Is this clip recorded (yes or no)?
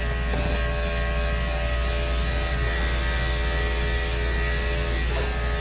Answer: yes